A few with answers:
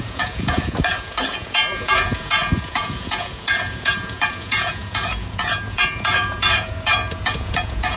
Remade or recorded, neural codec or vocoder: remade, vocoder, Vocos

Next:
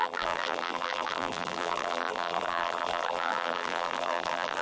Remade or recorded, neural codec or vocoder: remade, vocoder, BigVGAN v2